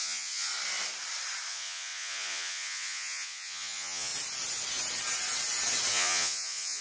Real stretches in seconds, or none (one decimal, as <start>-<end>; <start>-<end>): 0.5-1.5; 4.1-5.9